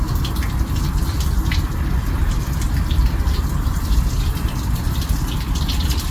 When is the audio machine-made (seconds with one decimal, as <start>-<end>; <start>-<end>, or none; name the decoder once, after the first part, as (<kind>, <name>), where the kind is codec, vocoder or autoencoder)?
none